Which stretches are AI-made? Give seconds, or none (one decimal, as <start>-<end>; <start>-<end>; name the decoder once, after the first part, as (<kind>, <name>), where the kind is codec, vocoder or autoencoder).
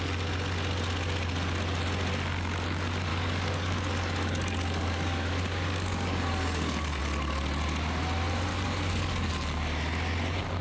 3.1-7.0 (codec, DAC); 8.5-9.3